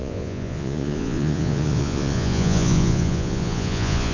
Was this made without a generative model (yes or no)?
no